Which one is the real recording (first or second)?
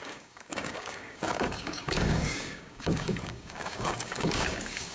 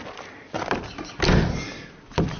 second